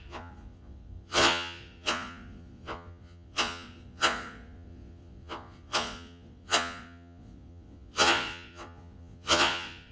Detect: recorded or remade remade